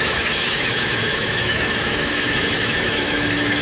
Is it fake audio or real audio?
fake